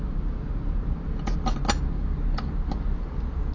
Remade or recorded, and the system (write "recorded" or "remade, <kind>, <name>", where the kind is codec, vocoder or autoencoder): recorded